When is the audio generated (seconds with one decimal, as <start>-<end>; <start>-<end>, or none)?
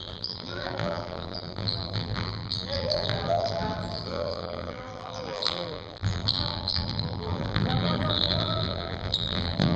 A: 0.0-9.8